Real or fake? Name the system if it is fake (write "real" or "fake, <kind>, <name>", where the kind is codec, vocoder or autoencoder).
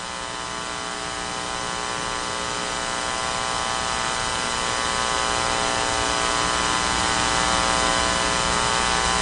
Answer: real